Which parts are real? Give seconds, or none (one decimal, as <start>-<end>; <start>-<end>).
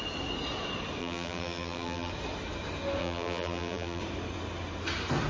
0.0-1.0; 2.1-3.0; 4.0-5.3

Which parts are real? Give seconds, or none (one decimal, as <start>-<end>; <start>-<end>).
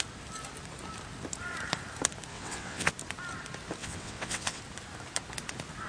0.0-2.3; 2.9-3.8; 4.6-5.9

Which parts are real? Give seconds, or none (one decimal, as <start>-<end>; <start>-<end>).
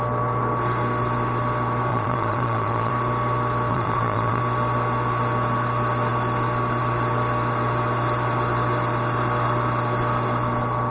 0.0-1.9; 2.9-3.7; 4.4-10.9